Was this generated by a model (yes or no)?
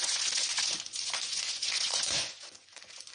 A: yes